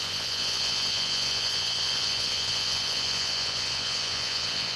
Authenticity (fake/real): fake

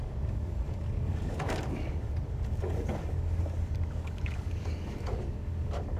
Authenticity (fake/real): fake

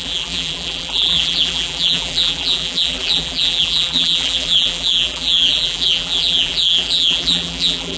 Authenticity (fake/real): fake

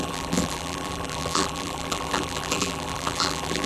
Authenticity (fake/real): fake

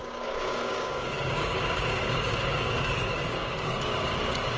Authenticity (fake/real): fake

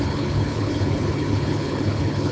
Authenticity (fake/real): fake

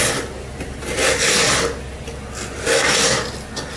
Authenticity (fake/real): real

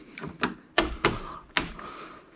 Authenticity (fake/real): real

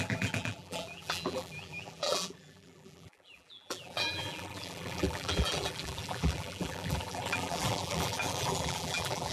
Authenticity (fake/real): fake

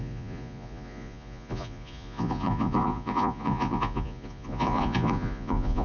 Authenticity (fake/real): fake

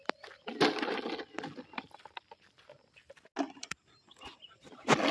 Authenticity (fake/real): real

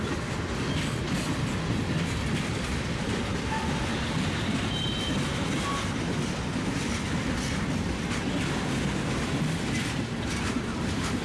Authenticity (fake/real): real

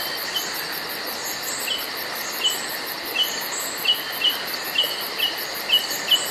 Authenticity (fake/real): real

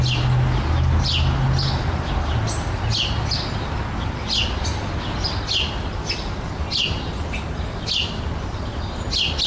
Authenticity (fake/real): real